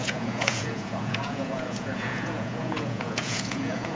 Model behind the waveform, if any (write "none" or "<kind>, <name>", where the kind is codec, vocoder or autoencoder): vocoder, Vocos